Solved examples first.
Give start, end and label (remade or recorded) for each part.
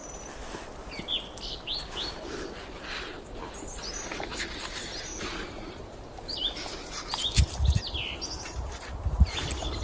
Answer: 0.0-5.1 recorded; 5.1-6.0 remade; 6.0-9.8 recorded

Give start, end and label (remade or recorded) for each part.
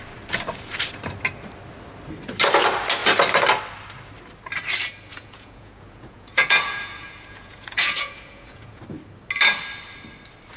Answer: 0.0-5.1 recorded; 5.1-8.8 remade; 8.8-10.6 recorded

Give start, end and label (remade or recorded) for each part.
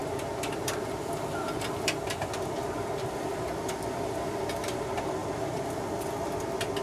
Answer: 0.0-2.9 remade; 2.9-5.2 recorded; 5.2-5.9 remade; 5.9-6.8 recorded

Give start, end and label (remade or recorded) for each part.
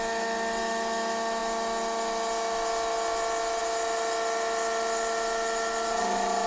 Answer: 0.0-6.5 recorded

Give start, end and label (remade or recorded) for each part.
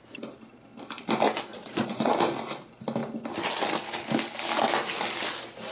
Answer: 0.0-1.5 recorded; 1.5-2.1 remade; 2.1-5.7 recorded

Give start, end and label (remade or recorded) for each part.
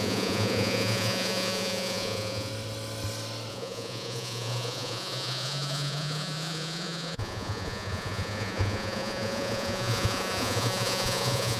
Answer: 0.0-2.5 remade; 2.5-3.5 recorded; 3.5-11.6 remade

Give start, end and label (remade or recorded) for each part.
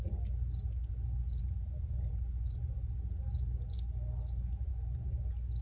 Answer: 0.0-1.4 recorded; 1.4-2.1 remade; 2.1-5.6 recorded